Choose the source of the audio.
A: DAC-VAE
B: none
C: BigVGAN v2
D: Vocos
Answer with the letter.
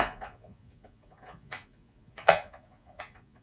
D